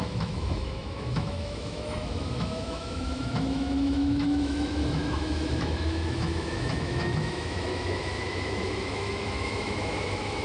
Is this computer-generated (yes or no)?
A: yes